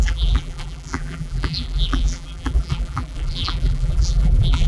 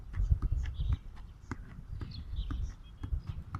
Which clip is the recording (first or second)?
second